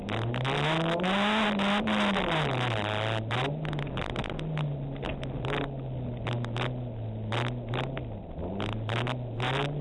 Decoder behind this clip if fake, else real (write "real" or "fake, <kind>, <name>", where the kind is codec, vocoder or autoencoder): real